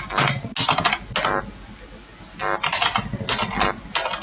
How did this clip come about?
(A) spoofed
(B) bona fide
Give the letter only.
B